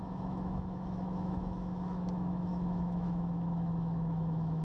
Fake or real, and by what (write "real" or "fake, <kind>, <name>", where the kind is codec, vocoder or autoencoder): fake, autoencoder, DAC-VAE